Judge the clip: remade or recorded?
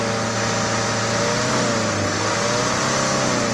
recorded